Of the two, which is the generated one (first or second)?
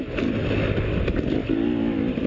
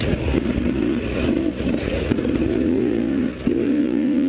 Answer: second